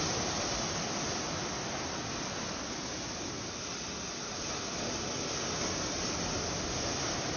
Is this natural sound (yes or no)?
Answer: yes